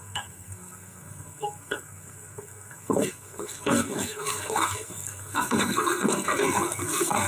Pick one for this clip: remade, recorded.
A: remade